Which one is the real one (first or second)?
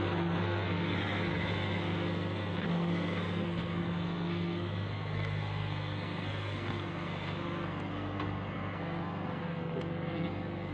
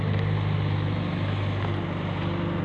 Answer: second